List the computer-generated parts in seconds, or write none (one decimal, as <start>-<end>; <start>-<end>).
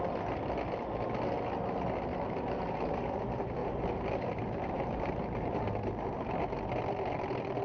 2.1-3.2; 3.6-6.8